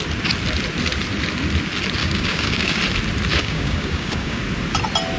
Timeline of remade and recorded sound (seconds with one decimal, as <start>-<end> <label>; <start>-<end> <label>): 0.0-2.0 recorded; 2.0-2.8 remade; 2.8-3.3 recorded; 3.3-4.4 remade; 4.4-5.2 recorded